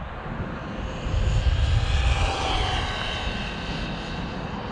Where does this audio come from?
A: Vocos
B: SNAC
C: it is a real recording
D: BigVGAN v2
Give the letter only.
C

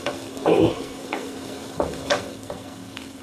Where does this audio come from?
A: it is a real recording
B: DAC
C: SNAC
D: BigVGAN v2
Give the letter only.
C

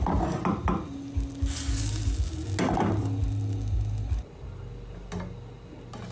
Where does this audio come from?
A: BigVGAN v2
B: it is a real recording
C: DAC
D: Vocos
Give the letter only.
B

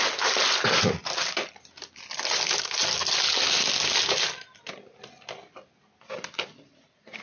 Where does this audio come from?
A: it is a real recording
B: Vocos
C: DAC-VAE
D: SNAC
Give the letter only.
A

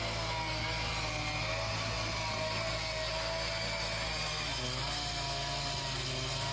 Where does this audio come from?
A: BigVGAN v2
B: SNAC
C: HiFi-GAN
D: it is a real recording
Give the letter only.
D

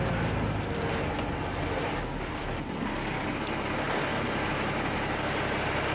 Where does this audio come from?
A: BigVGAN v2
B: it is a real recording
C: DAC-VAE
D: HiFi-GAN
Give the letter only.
B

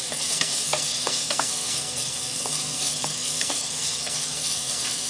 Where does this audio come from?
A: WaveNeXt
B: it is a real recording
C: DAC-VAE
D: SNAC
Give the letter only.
D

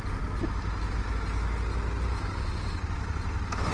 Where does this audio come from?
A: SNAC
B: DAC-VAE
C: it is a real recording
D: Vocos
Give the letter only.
C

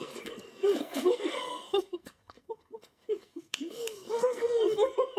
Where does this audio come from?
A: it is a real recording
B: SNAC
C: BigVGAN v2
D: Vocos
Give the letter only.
B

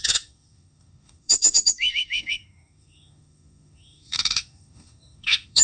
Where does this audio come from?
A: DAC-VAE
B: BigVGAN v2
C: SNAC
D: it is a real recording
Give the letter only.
A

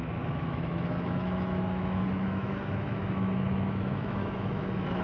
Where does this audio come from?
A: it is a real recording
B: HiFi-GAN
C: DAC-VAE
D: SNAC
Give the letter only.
C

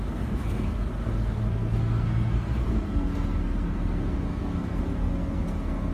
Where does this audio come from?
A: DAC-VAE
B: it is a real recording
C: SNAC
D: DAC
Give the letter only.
C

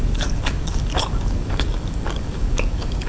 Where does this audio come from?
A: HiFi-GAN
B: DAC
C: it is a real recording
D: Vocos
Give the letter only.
B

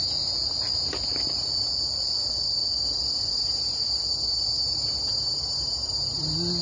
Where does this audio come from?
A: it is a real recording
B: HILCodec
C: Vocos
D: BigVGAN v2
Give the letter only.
A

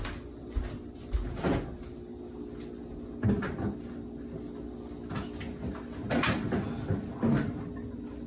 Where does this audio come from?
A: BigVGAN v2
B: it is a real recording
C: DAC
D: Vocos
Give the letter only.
B